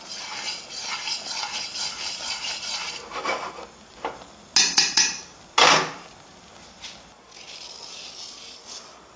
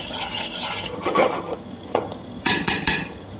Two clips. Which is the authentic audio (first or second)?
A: first